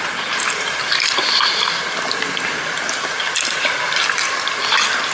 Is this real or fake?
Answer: fake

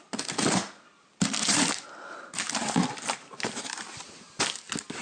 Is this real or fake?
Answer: real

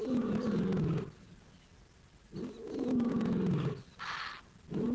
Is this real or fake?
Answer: real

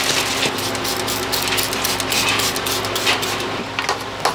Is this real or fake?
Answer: real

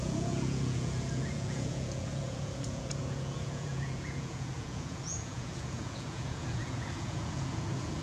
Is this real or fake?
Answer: fake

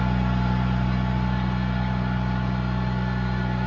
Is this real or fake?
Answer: real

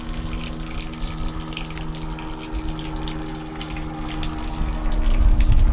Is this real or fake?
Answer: real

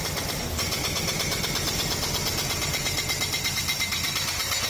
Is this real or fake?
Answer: real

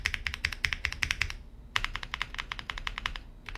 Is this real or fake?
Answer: fake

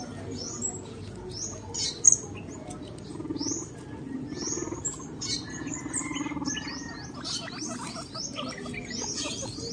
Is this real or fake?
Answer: real